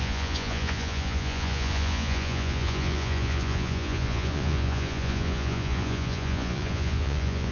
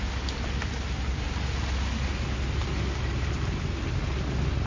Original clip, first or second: second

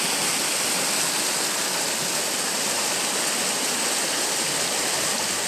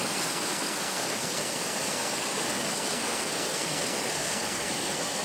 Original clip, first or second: first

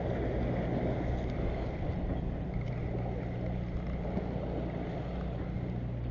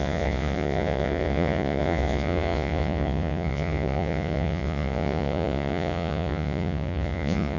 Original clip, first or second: first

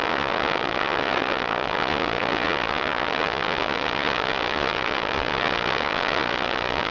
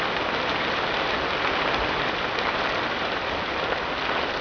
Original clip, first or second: second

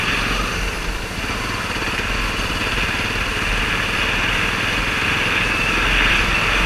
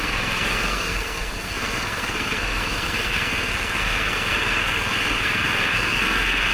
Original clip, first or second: first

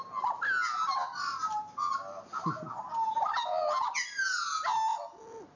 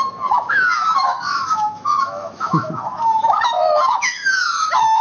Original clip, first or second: first